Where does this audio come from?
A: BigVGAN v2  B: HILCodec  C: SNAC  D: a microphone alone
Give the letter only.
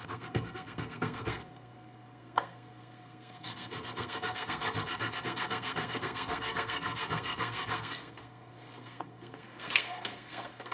C